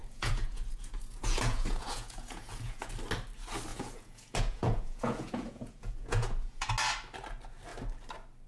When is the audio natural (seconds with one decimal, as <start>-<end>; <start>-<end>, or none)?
2.9-3.7; 6.7-8.5